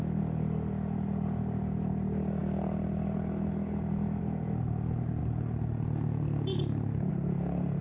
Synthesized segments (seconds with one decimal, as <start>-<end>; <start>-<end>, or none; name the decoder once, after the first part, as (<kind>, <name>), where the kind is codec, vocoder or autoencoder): 2.4-4.2 (vocoder, BigVGAN v2)